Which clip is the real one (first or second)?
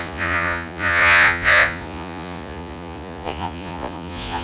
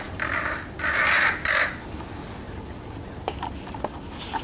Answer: second